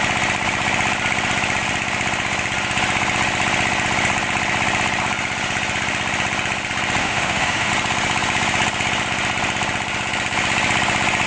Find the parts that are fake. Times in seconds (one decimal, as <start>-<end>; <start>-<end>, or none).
7.0-7.7